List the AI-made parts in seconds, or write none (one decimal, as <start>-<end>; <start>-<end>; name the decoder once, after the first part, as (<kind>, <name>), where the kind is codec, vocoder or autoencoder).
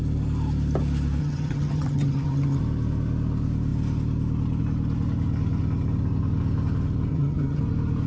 1.2-2.6 (vocoder, HiFi-GAN); 7.1-7.6